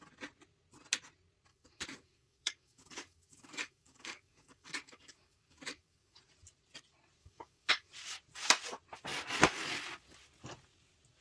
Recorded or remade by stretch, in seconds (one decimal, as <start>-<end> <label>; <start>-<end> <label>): 0.0-1.5 recorded; 1.5-6.2 remade; 6.2-7.2 recorded; 7.2-7.9 remade; 7.9-11.2 recorded